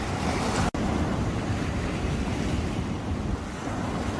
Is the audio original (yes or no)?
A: yes